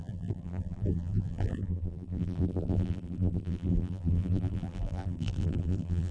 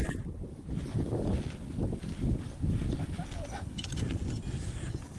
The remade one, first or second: first